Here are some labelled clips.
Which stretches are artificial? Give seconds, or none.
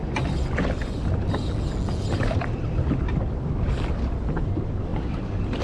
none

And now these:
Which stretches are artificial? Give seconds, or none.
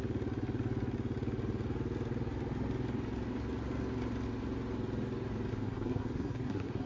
5.5-6.9 (codec, SNAC)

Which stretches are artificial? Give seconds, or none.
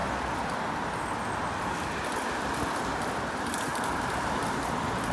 3.7-4.4 (vocoder, BigVGAN v2)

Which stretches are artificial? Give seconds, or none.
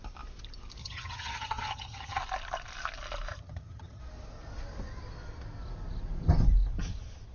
0.8-2.2 (vocoder, HiFi-GAN); 3.3-4.0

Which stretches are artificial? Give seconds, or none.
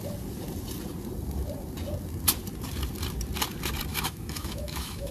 3.9-5.1 (autoencoder, DAC-VAE)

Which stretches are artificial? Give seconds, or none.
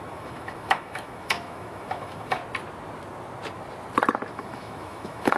0.0-2.4 (autoencoder, DAC-VAE); 4.3-5.4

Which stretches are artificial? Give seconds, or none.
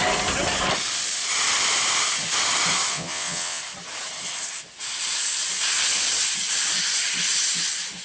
2.9-3.6 (vocoder, WaveNeXt)